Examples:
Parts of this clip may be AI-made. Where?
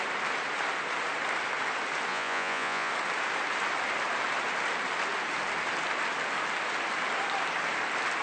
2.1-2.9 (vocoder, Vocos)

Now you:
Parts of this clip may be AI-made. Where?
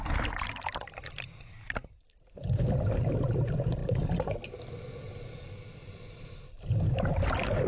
none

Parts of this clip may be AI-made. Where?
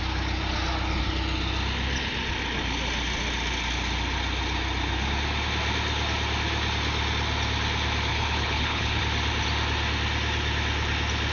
8.1-9.0 (codec, HILCodec)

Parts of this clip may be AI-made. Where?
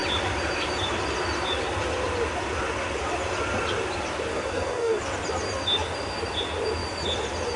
4.3-5.0 (codec, DAC)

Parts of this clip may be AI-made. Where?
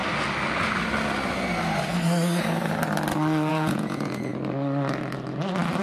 3.5-4.3 (vocoder, Vocos)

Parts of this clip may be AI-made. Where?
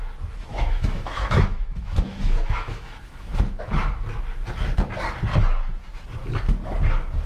0.5-3.7 (autoencoder, DAC-VAE)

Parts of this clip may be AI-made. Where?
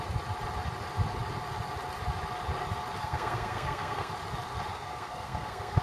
3.0-4.1 (codec, SNAC); 4.7-5.8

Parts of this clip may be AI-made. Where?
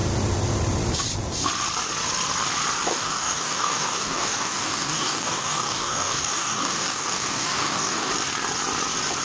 2.9-8.1 (codec, DAC)